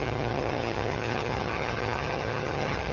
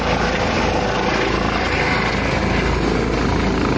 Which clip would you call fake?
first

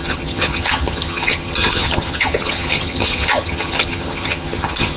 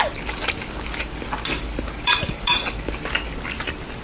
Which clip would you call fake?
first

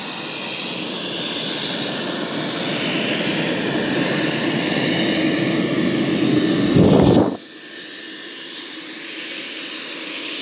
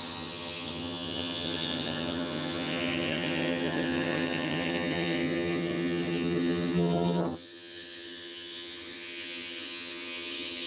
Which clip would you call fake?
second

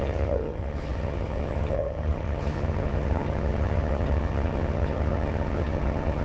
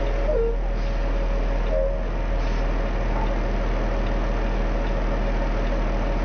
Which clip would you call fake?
first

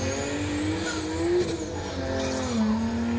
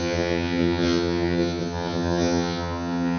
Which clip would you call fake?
second